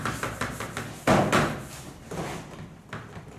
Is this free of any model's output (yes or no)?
yes